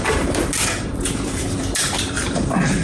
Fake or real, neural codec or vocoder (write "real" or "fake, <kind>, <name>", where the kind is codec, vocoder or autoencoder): fake, vocoder, BigVGAN v2